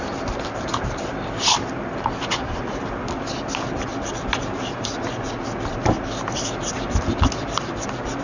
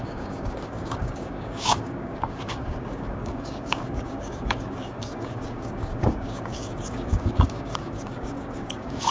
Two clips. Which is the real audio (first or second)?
first